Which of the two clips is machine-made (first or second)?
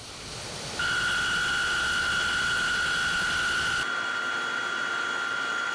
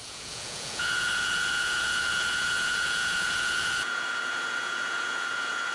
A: second